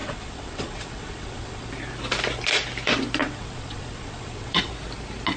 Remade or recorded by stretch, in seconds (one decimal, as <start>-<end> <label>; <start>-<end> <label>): 0.0-1.7 remade; 1.7-3.2 recorded; 3.2-4.7 remade; 4.7-5.4 recorded